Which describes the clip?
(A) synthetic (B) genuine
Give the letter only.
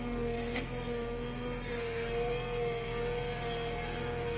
A